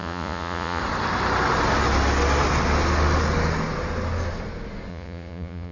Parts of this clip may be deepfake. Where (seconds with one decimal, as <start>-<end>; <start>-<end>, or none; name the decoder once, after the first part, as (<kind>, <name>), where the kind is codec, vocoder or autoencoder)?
0.0-0.8 (vocoder, Vocos); 4.9-5.7